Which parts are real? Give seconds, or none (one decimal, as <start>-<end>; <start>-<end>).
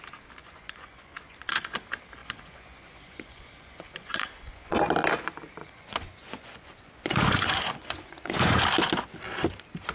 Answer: 0.0-0.4; 1.8-2.2; 4.8-5.6; 8.6-9.9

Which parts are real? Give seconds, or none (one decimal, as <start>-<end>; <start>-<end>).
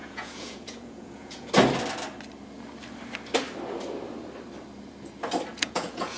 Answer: 1.5-5.5